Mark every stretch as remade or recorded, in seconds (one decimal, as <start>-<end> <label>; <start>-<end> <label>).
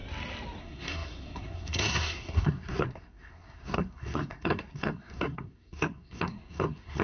0.0-0.6 recorded; 0.6-7.0 remade